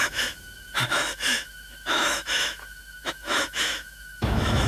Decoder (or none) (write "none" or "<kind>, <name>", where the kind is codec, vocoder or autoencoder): autoencoder, DAC-VAE